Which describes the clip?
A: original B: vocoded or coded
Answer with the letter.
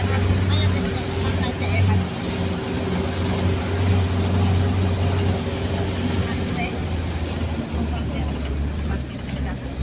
A